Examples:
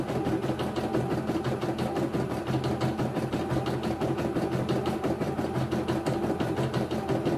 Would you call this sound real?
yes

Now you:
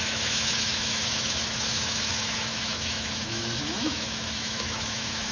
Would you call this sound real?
no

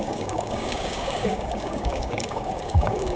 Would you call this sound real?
no